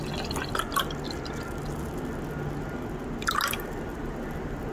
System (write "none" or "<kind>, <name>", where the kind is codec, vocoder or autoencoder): none